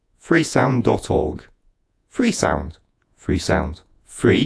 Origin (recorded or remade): remade